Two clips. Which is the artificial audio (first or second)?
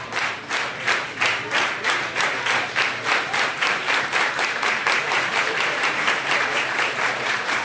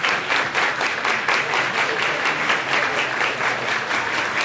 first